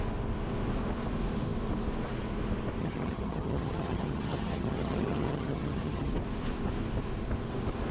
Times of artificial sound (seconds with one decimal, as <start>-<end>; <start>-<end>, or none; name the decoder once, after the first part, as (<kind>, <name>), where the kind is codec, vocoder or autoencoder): 2.8-6.1 (vocoder, HiFi-GAN)

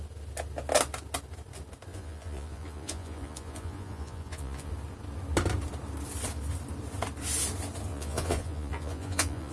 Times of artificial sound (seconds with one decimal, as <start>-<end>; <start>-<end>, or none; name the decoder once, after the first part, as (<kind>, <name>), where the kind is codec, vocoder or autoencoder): 1.9-4.7 (vocoder, Vocos); 7.9-9.5

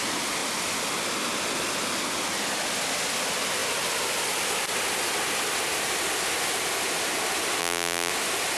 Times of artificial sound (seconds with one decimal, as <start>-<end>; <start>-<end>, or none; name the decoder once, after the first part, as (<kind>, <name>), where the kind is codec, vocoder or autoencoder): 7.6-8.1 (vocoder, BigVGAN v2)

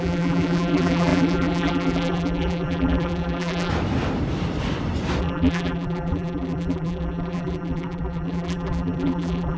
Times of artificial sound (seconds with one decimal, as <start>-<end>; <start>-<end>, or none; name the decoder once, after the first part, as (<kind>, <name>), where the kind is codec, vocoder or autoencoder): 0.0-3.7 (vocoder, BigVGAN v2); 5.2-9.6

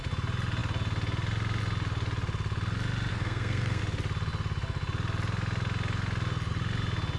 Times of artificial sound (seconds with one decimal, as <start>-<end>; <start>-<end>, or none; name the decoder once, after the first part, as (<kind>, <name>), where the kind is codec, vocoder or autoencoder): 3.1-3.8 (codec, SNAC)

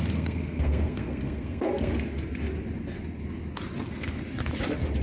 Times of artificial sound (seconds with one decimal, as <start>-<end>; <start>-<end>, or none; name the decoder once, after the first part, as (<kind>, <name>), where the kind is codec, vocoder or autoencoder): 0.0-1.9 (codec, SNAC)

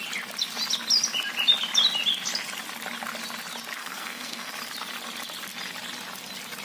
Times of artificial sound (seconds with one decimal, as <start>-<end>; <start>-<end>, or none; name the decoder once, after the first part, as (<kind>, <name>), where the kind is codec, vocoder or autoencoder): 3.8-4.5 (codec, SNAC)